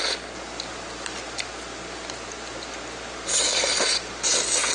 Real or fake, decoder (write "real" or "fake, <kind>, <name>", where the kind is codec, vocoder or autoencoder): real